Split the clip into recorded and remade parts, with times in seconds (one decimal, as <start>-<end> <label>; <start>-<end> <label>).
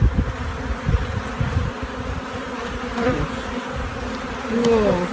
0.0-0.5 recorded; 0.5-3.3 remade; 3.3-5.1 recorded